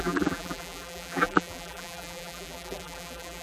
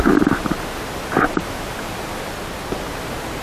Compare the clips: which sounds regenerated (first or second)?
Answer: first